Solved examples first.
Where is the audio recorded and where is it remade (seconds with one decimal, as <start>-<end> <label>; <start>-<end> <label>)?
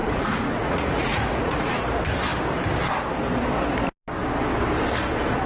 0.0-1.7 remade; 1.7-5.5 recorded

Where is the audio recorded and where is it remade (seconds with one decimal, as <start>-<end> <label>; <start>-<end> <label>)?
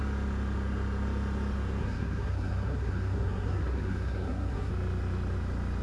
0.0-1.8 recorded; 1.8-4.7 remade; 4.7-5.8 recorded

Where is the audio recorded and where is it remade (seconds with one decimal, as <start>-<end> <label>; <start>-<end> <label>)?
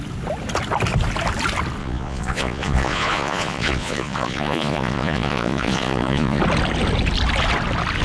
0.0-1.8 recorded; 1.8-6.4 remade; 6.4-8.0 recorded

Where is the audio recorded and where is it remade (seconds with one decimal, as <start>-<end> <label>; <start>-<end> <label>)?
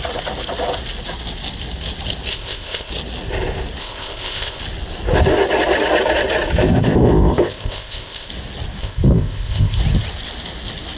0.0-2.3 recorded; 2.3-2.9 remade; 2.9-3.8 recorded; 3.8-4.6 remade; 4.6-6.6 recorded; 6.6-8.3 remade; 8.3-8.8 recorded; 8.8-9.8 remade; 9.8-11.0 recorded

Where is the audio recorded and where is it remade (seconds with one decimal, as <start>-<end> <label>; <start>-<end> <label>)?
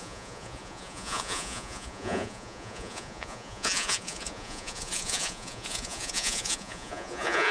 0.0-7.5 remade